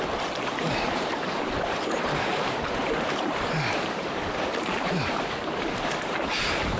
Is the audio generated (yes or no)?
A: yes